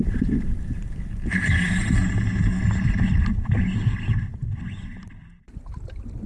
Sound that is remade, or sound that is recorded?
recorded